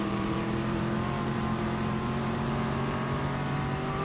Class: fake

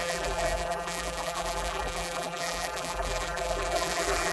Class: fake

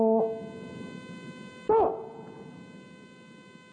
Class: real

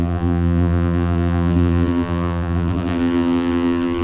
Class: fake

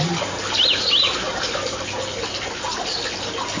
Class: real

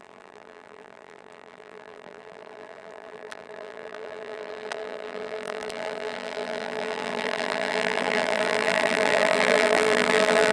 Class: fake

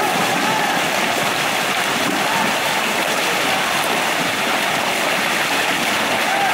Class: real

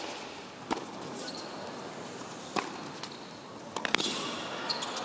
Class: real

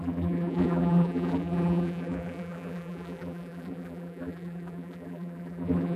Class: fake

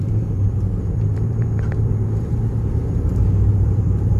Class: fake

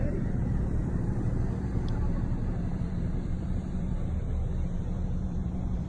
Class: fake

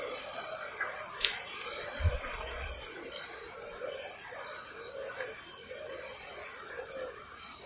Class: fake